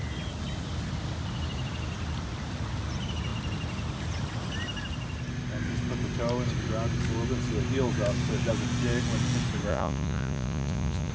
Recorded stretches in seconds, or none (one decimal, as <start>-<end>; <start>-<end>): 0.0-9.7